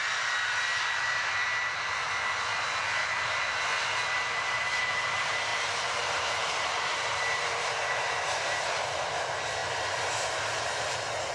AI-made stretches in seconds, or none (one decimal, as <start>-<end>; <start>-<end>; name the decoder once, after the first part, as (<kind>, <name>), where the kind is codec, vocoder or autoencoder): 5.5-8.8 (vocoder, BigVGAN v2); 9.6-10.7